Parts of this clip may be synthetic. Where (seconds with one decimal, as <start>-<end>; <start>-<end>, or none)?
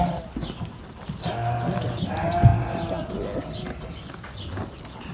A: none